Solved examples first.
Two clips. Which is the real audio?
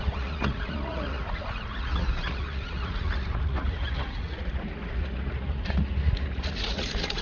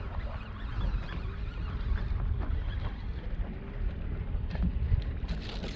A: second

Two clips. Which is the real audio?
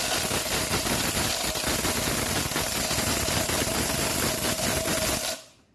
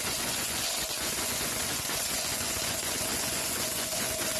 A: first